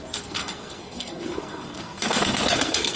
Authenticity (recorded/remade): remade